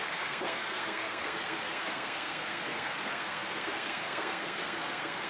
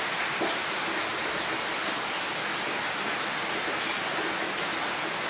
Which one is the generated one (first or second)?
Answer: first